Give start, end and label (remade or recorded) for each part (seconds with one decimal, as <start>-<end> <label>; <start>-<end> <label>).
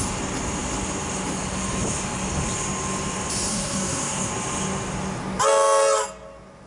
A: 0.0-3.5 recorded; 3.5-4.3 remade; 4.3-6.7 recorded